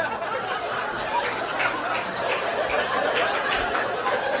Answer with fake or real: real